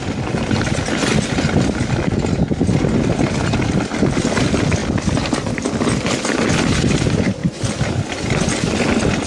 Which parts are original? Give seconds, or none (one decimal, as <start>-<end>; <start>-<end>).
0.0-4.8; 5.7-9.3